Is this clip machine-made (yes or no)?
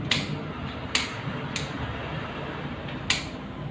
no